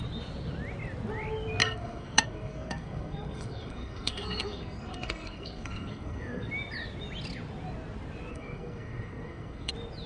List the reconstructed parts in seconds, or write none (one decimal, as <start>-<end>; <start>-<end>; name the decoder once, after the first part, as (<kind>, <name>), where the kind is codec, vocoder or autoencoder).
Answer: 1.6-6.5 (codec, SNAC); 8.3-9.7